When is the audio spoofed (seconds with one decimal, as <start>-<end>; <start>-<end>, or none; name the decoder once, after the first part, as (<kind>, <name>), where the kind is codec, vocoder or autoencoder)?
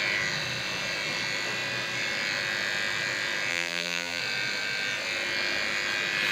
3.5-4.2 (vocoder, BigVGAN v2)